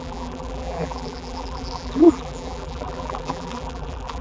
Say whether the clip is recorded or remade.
remade